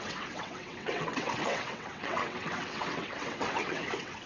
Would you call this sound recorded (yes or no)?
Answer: no